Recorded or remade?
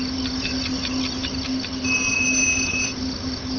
recorded